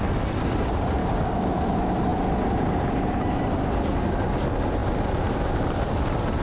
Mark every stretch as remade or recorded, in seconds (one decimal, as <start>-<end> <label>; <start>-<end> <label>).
0.0-1.0 recorded; 1.0-1.7 remade; 1.7-6.4 recorded